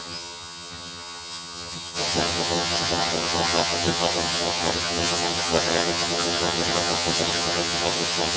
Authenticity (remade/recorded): remade